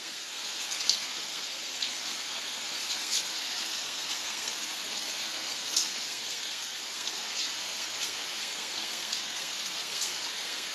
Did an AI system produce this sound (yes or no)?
yes